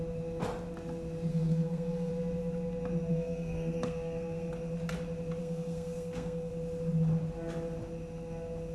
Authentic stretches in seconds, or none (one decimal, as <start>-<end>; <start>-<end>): 0.0-1.3; 2.1-3.1; 4.5-5.4; 6.5-8.7